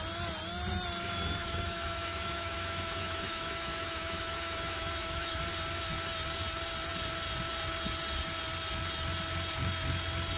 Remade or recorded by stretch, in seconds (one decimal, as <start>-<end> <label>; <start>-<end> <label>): 0.0-1.4 recorded; 1.4-5.4 remade; 5.4-10.4 recorded